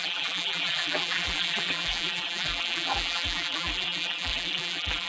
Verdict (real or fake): fake